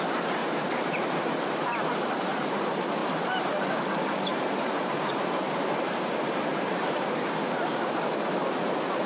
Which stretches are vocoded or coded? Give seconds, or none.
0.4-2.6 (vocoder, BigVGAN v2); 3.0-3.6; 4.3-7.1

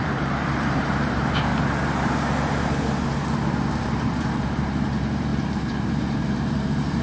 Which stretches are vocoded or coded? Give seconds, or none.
0.0-1.5 (vocoder, BigVGAN v2); 3.8-7.0

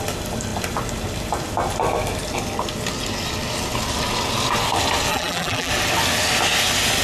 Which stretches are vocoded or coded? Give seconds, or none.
5.1-5.7 (vocoder, BigVGAN v2)

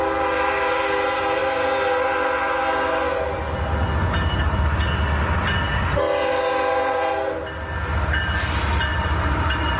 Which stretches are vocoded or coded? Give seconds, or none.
8.9-9.8 (vocoder, BigVGAN v2)

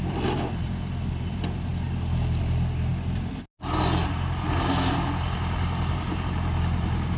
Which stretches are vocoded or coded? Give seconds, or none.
0.0-1.7 (vocoder, BigVGAN v2); 2.4-2.9; 5.9-7.2

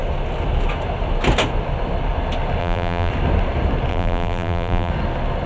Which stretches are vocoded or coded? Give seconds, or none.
2.6-3.1 (vocoder, BigVGAN v2); 3.9-4.9

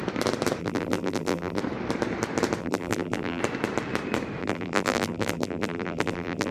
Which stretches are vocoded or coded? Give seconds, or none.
0.6-1.6 (vocoder, BigVGAN v2); 2.6-3.4; 4.4-6.5

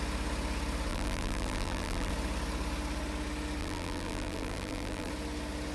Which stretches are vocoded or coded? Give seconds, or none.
0.9-2.1 (vocoder, BigVGAN v2); 3.6-5.1